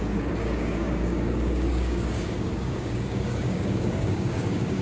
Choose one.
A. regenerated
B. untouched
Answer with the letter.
A